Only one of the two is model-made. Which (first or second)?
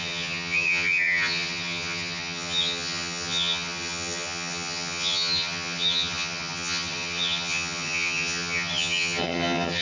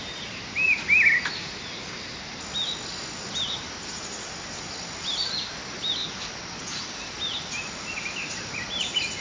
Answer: first